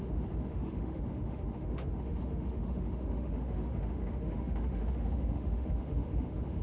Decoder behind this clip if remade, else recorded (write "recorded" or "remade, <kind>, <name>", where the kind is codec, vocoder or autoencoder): remade, autoencoder, DAC-VAE